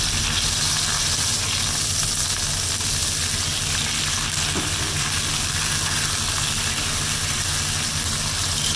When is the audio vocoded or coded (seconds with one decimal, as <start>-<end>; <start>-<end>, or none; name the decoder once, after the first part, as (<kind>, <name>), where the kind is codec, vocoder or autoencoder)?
none